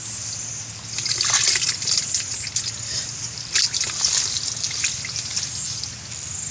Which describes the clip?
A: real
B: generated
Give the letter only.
A